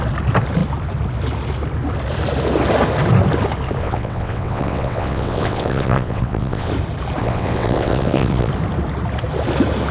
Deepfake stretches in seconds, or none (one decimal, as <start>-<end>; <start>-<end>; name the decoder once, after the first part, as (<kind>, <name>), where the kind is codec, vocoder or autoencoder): 3.8-6.7 (vocoder, WaveNeXt); 7.2-8.5